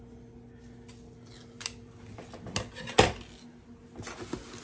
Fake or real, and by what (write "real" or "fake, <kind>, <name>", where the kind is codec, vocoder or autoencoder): real